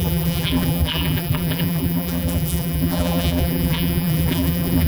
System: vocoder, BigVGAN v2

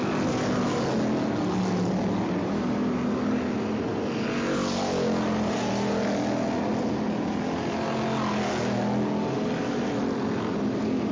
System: none